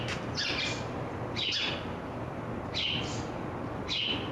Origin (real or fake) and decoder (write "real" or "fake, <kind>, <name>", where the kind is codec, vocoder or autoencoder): real